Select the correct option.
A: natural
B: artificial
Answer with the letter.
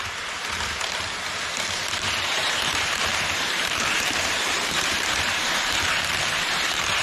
B